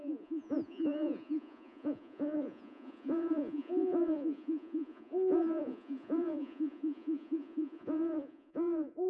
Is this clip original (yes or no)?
no